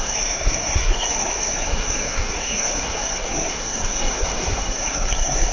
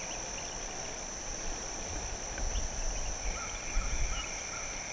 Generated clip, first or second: first